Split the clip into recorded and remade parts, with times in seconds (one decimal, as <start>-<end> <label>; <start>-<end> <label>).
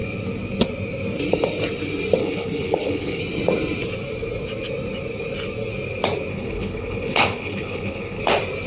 0.0-2.2 recorded; 2.2-3.2 remade; 3.2-6.3 recorded; 6.3-8.2 remade; 8.2-8.7 recorded